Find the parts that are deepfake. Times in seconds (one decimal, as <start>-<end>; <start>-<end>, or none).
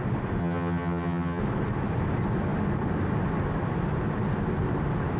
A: 0.4-1.4